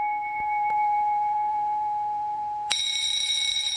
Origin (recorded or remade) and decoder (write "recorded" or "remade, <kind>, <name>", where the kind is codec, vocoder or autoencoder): remade, vocoder, BigVGAN v2